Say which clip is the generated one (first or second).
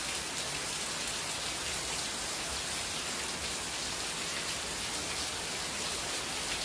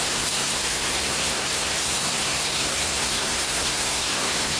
second